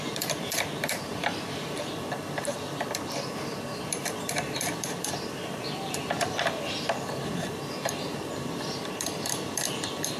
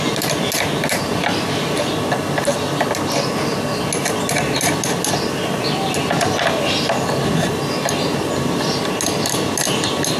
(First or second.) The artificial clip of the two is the first